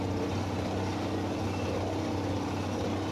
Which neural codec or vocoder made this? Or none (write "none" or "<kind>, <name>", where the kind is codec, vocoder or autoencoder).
none